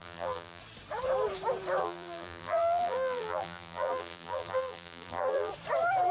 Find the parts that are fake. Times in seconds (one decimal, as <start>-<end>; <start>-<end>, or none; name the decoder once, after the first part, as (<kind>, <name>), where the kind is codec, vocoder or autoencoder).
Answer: 0.0-0.6 (vocoder, BigVGAN v2); 1.8-5.5